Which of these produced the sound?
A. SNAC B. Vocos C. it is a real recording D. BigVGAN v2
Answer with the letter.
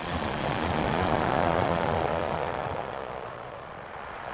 B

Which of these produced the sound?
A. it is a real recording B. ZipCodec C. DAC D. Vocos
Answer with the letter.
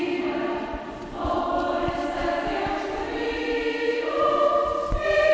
A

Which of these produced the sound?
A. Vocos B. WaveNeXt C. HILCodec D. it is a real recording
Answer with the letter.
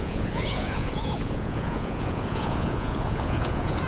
A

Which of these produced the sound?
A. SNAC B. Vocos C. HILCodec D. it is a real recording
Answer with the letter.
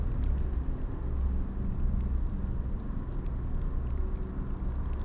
D